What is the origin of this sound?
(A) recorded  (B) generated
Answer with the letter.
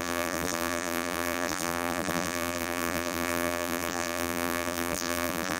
B